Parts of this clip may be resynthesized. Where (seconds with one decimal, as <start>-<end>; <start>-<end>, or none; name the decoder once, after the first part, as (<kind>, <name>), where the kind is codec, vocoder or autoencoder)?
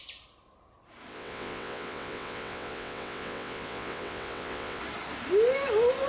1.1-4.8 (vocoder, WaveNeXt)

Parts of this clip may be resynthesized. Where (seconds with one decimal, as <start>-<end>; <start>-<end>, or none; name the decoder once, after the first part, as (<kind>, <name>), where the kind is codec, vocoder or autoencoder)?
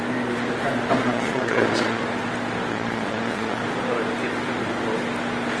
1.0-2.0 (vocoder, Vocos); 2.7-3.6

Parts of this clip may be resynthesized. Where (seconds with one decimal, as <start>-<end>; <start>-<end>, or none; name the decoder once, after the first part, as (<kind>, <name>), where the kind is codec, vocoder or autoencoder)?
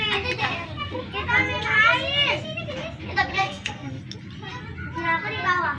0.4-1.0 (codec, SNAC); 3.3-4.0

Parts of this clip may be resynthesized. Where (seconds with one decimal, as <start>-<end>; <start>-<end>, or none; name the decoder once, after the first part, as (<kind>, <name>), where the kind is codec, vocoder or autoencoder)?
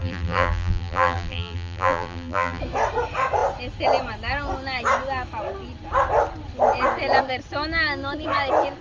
0.0-2.6 (vocoder, BigVGAN v2)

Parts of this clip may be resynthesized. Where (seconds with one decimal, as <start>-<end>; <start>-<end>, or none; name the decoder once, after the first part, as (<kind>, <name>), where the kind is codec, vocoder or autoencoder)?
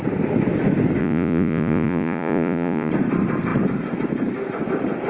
1.0-2.9 (vocoder, Vocos)